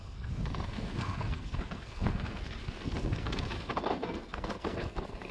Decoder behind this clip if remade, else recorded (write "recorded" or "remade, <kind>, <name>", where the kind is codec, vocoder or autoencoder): remade, codec, SNAC